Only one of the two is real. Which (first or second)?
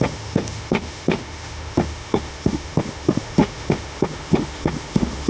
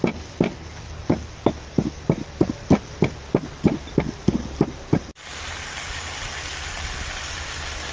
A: second